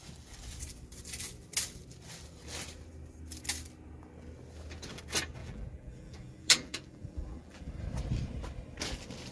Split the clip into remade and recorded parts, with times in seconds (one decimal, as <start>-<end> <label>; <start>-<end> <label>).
0.0-5.4 recorded; 5.4-7.7 remade; 7.7-9.3 recorded